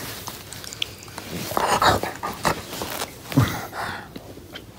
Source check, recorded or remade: recorded